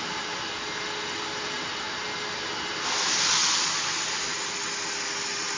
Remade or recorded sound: recorded